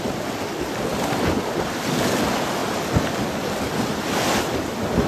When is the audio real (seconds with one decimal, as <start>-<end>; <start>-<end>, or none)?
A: 0.0-5.1